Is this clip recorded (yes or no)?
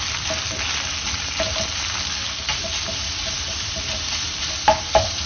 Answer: yes